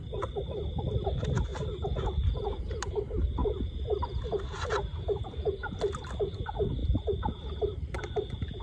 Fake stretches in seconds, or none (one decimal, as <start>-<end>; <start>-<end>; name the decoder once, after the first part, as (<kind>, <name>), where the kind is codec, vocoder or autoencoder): none